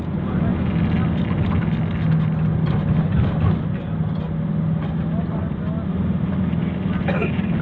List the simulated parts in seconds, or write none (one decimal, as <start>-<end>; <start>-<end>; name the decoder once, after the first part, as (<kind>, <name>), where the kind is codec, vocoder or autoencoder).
none

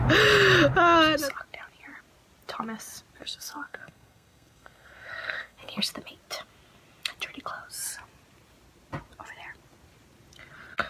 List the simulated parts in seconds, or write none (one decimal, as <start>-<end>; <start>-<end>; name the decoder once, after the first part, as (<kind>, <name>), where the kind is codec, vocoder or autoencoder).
3.2-5.8 (codec, SNAC)

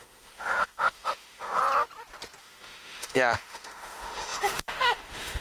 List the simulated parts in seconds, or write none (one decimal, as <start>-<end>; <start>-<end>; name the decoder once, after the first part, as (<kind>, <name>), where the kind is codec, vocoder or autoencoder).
0.0-1.6 (autoencoder, DAC-VAE); 2.4-5.4

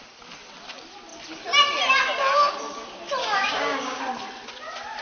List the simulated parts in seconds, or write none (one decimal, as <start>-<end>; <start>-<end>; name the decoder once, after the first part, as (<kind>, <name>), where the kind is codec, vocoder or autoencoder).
3.2-4.0 (codec, DAC)

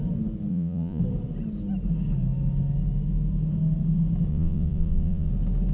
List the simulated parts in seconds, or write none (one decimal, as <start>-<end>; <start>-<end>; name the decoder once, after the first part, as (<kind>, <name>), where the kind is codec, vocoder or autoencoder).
0.5-1.0 (vocoder, Vocos); 4.3-5.3

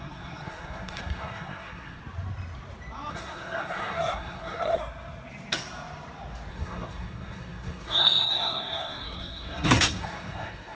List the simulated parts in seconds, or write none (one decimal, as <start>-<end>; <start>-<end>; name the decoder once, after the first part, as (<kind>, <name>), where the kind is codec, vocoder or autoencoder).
0.0-2.0 (codec, SNAC); 3.1-4.8; 6.5-10.7

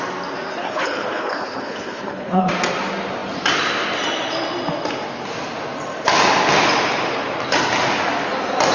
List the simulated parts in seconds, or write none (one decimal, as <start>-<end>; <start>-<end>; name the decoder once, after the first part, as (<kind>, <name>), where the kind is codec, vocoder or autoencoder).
0.6-2.5 (codec, HILCodec)